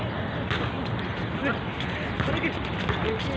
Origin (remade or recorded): recorded